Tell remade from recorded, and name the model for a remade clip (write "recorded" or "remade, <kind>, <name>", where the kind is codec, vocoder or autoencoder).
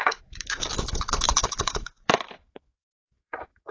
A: remade, autoencoder, DAC-VAE